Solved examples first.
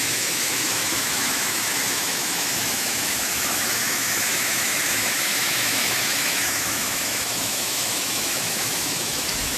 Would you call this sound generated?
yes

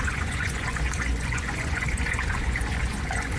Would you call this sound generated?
yes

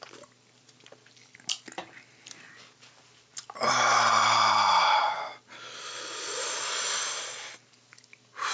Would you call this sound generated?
no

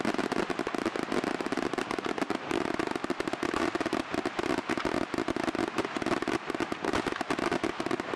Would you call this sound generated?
no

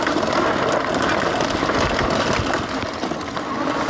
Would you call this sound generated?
no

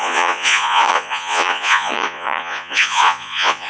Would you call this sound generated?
yes